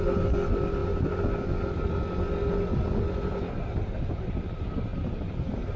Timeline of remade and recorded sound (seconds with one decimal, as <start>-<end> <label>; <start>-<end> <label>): 0.0-4.9 recorded; 4.9-5.8 remade